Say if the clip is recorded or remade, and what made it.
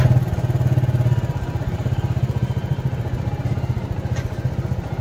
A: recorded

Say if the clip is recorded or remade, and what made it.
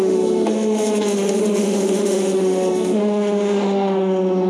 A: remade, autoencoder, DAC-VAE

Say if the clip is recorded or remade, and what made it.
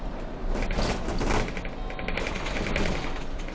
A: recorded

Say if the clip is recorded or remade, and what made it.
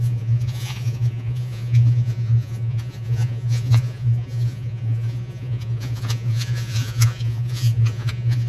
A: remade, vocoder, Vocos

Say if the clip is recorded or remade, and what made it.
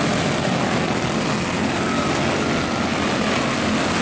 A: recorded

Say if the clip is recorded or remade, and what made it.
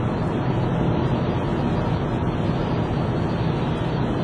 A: recorded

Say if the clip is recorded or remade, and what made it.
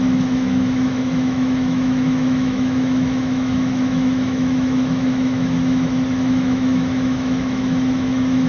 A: remade, autoencoder, DAC-VAE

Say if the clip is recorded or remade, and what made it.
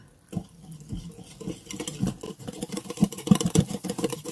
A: recorded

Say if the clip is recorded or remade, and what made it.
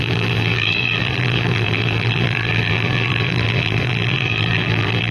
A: remade, vocoder, BigVGAN v2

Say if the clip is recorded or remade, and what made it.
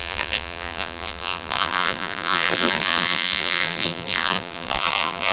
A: remade, vocoder, BigVGAN v2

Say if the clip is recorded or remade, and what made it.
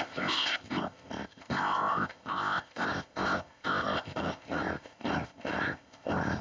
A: remade, codec, ZipCodec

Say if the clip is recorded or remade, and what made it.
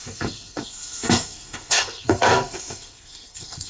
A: remade, codec, SNAC